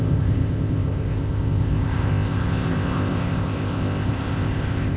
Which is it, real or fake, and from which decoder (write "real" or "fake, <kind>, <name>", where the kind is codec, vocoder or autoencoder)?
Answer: fake, codec, ZipCodec